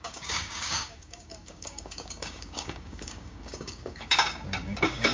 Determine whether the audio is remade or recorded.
remade